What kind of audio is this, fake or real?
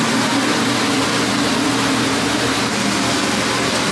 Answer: real